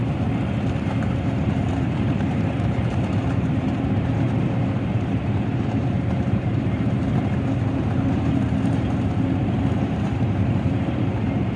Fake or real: fake